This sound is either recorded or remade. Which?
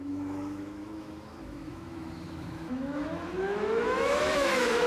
remade